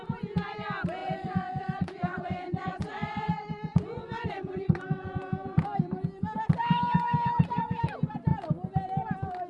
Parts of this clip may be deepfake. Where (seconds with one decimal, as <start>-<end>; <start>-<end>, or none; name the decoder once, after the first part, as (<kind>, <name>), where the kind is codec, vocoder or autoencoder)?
1.0-5.2 (vocoder, Vocos)